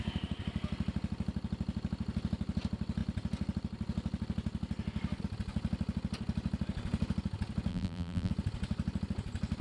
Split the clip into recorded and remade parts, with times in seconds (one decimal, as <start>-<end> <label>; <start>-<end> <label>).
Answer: 0.0-7.7 recorded; 7.7-8.3 remade; 8.3-9.6 recorded